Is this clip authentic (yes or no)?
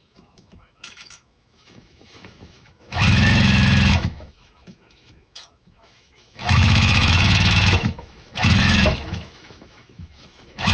no